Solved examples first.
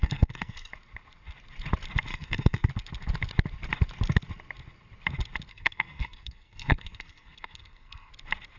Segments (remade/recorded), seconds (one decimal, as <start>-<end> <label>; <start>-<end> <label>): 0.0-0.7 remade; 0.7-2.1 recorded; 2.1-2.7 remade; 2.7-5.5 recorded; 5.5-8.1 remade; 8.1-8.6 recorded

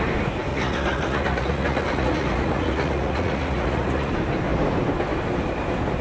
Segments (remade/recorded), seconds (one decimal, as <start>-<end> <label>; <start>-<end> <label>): 0.0-0.5 recorded; 0.5-4.1 remade; 4.1-6.0 recorded

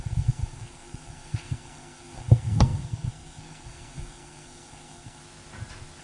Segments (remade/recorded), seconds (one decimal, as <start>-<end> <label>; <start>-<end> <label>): 0.0-5.2 remade; 5.2-6.0 recorded